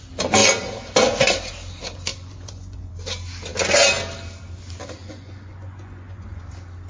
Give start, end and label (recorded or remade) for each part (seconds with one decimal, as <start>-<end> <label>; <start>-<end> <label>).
0.0-2.1 recorded; 2.1-2.9 remade; 2.9-5.0 recorded; 5.0-6.4 remade; 6.4-6.9 recorded